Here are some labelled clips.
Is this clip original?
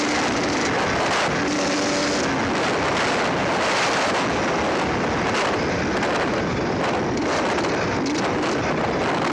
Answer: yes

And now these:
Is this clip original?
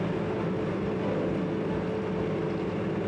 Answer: yes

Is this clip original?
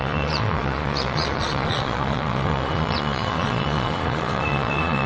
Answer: no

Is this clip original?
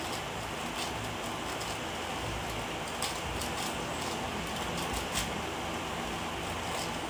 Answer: yes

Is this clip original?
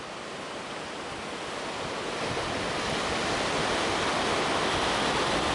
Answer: yes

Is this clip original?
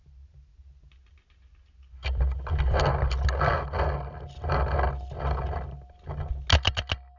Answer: yes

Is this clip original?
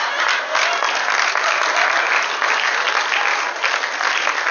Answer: yes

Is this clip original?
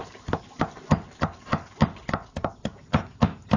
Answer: yes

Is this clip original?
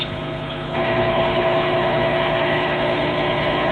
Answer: no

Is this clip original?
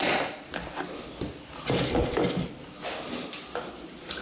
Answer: yes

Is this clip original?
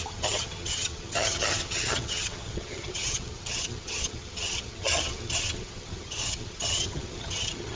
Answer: no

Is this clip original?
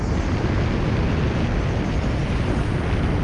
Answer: yes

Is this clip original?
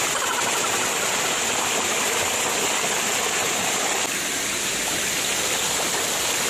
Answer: yes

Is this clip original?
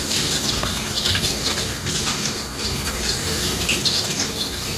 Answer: no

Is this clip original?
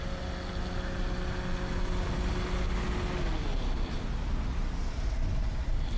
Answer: yes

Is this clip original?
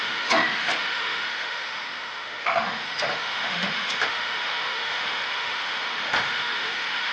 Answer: no